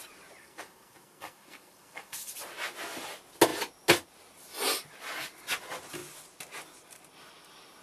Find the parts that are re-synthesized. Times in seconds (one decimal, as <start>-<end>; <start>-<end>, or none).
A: 0.4-2.3